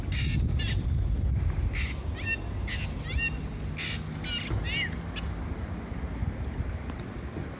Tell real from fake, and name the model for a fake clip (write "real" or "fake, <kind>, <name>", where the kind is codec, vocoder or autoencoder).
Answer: real